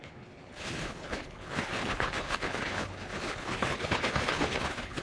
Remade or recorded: remade